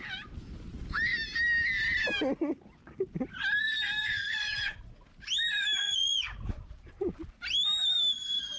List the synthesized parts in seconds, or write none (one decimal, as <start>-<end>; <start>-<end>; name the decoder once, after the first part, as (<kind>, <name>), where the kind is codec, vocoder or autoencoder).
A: 4.0-5.1 (vocoder, Vocos); 5.8-6.5